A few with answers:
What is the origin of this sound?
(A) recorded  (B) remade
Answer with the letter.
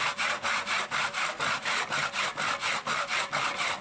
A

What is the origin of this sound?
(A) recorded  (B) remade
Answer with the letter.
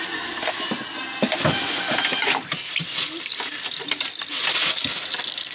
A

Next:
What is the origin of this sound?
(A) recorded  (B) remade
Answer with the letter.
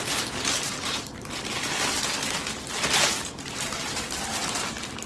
A